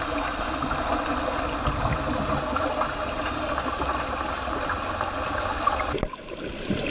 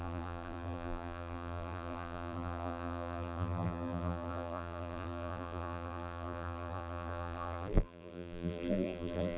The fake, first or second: second